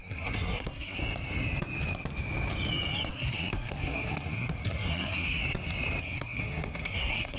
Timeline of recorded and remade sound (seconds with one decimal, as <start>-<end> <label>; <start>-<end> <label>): 0.0-1.0 remade; 1.0-3.1 recorded; 3.1-5.4 remade; 5.4-6.0 recorded; 6.0-7.4 remade